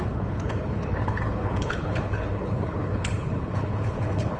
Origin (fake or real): fake